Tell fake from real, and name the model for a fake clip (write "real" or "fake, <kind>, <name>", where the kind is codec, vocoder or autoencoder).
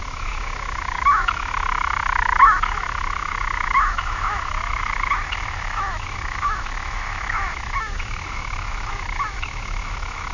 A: fake, autoencoder, DAC-VAE